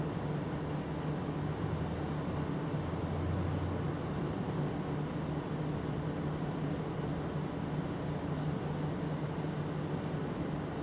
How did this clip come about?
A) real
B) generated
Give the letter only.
A